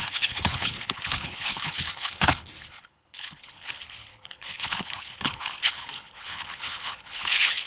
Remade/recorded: remade